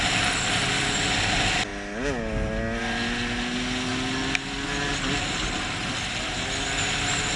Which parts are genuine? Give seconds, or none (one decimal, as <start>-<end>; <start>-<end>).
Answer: 0.0-7.4